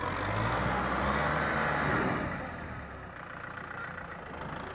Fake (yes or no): no